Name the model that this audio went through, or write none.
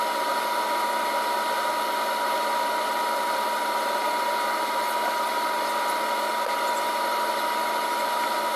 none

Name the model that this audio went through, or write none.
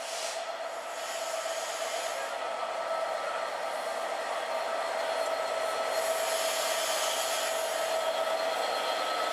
none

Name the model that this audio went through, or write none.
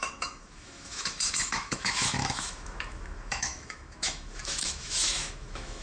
autoencoder, DAC-VAE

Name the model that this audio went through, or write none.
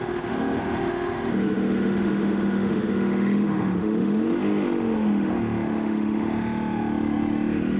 autoencoder, DAC-VAE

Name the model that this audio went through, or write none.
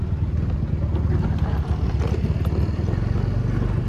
none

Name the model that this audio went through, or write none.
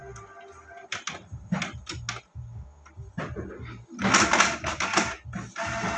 none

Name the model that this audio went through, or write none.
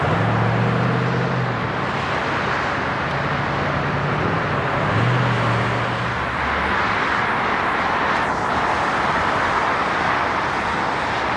none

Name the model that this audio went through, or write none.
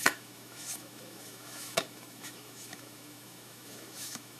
autoencoder, DAC-VAE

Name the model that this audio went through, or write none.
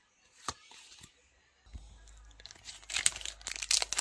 none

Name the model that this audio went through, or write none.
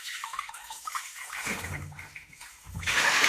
autoencoder, DAC-VAE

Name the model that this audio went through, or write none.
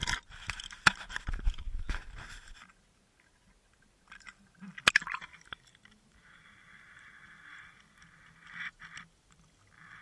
none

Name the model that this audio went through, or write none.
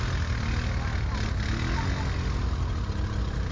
none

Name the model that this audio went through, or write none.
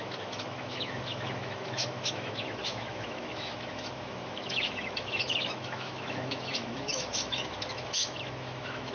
autoencoder, DAC-VAE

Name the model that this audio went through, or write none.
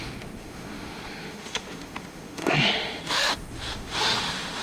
autoencoder, DAC-VAE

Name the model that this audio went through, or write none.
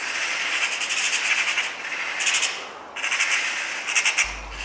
none